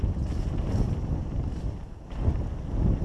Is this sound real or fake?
real